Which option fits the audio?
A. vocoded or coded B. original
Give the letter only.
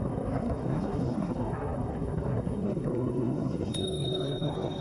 A